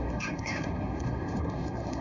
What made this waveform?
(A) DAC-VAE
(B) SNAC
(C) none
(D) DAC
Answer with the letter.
B